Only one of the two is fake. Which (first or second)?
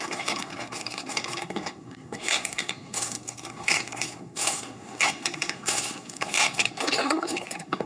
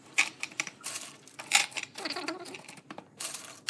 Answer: first